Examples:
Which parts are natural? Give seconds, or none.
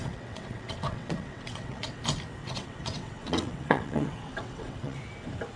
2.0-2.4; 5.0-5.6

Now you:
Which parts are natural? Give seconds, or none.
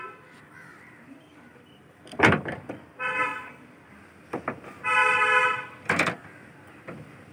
0.0-0.7; 2.6-3.3; 3.9-5.0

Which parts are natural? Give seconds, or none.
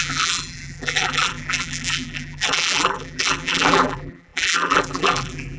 none